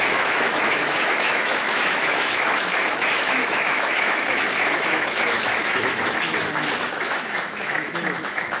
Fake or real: fake